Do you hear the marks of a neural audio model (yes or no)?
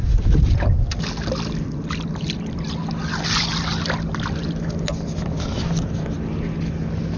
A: no